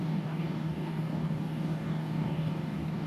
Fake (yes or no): yes